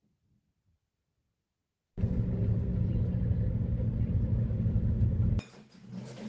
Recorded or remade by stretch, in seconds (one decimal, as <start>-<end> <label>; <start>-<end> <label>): 0.0-6.3 recorded